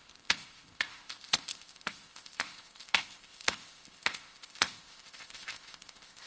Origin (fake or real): fake